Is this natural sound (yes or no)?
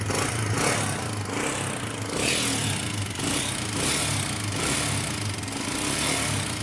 yes